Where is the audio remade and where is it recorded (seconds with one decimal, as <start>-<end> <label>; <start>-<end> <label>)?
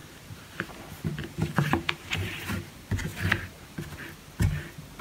0.0-0.7 remade; 0.7-1.2 recorded; 1.2-2.7 remade; 2.7-3.1 recorded; 3.1-3.7 remade; 3.7-5.0 recorded